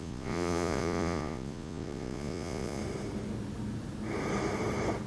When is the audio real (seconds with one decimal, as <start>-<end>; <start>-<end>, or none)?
2.8-5.1